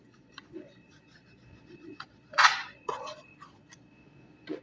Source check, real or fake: fake